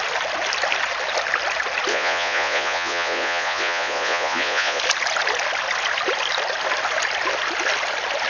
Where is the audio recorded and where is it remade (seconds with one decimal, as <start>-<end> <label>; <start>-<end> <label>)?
0.0-1.9 recorded; 1.9-4.8 remade; 4.8-8.3 recorded